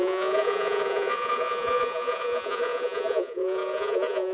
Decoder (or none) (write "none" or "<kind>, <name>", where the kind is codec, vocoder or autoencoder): vocoder, Vocos